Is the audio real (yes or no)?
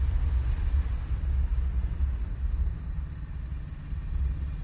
yes